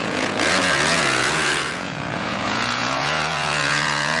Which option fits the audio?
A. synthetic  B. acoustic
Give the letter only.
A